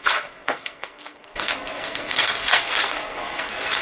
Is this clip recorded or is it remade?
remade